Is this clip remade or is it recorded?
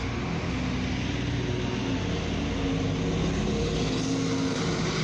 recorded